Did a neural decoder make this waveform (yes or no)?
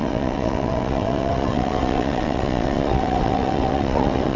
yes